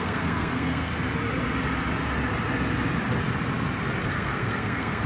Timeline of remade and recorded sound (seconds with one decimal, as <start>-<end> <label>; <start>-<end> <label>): 0.0-0.9 remade; 0.9-4.0 recorded; 4.0-5.1 remade